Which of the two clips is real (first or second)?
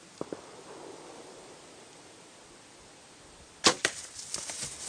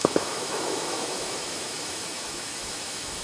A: first